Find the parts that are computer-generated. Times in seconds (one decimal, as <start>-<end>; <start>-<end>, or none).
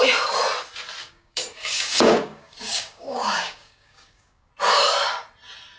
1.0-4.5